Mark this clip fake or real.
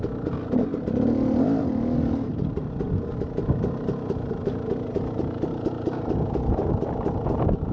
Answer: real